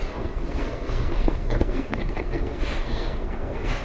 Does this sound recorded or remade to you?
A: remade